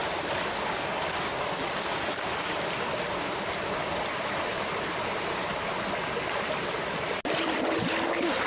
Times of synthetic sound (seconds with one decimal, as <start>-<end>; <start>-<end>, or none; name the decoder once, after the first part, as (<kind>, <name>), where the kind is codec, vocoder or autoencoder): 1.4-5.4 (vocoder, BigVGAN v2)